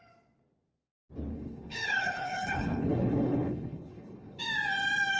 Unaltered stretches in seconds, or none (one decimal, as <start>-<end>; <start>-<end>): 0.0-1.3; 4.4-5.2